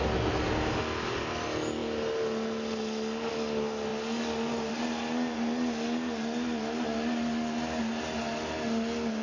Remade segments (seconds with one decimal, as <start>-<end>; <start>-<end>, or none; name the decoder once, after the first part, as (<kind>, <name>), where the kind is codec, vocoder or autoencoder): none